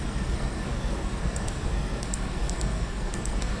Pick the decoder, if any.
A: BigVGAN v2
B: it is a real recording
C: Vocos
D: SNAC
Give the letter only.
D